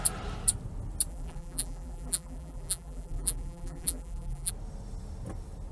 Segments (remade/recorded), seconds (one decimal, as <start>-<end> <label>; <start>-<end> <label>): 0.0-1.1 recorded; 1.1-4.5 remade; 4.5-5.7 recorded